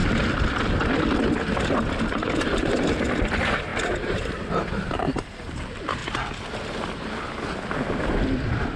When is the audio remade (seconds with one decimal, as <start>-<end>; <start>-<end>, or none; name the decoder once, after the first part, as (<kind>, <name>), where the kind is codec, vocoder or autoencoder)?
2.3-6.0 (vocoder, BigVGAN v2); 7.9-8.8